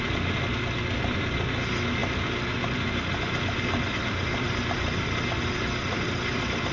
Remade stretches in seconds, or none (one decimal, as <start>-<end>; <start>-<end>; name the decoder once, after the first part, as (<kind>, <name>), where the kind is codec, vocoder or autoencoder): none